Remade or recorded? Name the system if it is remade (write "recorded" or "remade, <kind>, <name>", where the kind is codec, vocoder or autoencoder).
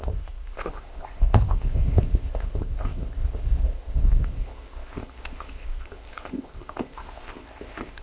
remade, codec, ZipCodec